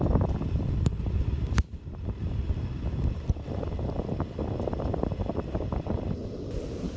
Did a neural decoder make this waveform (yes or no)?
no